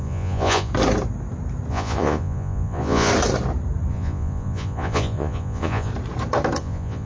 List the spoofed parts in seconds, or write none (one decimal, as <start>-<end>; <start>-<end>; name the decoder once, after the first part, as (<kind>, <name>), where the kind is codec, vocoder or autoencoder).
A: 0.0-0.7 (vocoder, Vocos); 1.7-3.1; 3.9-5.9; 6.6-7.1